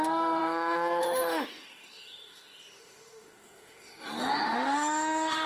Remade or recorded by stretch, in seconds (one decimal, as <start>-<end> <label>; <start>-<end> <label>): 0.0-5.5 remade